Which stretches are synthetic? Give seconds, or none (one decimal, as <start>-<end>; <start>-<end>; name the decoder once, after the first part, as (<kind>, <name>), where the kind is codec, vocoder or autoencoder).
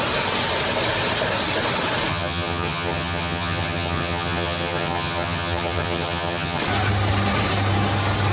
2.1-6.6 (vocoder, HiFi-GAN)